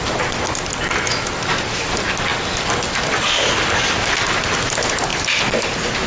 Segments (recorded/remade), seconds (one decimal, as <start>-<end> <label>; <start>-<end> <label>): 0.0-6.1 recorded